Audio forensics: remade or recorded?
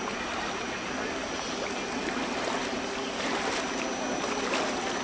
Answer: recorded